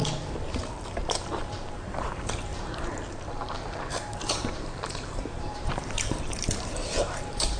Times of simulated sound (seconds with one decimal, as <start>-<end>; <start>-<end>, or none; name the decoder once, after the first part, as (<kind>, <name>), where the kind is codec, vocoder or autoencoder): 0.0-7.6 (vocoder, BigVGAN v2)